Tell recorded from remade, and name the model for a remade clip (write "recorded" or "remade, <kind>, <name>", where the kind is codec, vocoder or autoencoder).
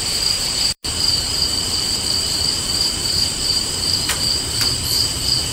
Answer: remade, vocoder, BigVGAN v2